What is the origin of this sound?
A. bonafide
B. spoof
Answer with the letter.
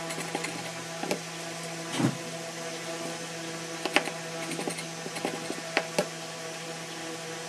A